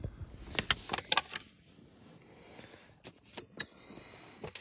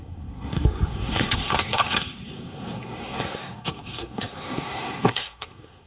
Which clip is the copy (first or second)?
second